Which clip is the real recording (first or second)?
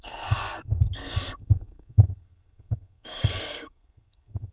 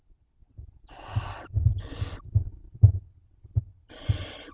second